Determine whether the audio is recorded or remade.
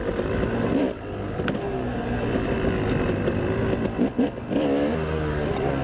recorded